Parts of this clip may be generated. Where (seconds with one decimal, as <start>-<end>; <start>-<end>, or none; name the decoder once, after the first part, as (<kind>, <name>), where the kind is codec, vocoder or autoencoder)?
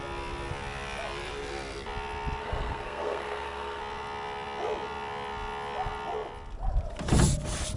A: 2.4-3.8 (codec, SNAC)